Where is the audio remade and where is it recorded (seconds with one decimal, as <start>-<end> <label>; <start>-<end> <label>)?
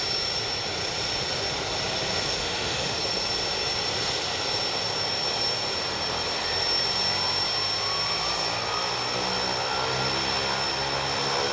0.0-2.4 recorded; 2.4-3.0 remade; 3.0-11.5 recorded